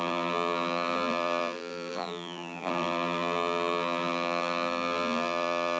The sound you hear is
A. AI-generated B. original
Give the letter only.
A